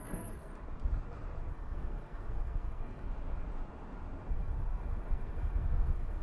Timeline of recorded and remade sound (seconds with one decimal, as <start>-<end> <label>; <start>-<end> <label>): 0.0-0.5 remade; 0.5-1.5 recorded; 1.5-3.1 remade; 3.1-4.3 recorded; 4.3-6.2 remade